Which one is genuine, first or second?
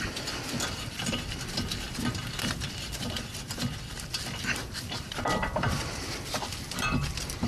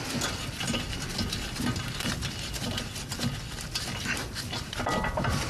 second